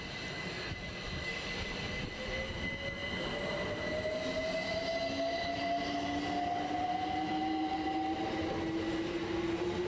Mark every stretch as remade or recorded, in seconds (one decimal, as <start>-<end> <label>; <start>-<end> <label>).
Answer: 0.0-9.9 recorded